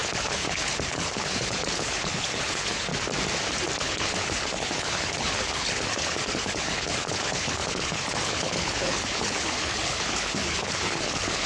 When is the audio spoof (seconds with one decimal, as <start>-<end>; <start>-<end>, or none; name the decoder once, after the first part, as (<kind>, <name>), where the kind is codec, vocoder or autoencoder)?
0.0-2.9 (codec, HILCodec); 3.8-11.5